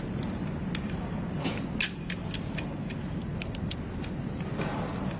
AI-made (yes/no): no